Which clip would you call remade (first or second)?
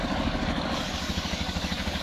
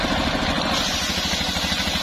first